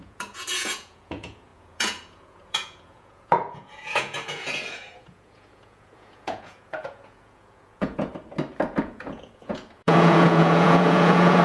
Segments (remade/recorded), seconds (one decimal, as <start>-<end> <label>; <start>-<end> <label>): 0.0-8.1 remade; 8.1-8.8 recorded; 8.8-11.4 remade